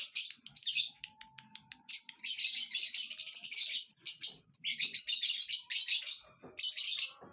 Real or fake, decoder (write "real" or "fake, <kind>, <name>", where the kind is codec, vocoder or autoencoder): real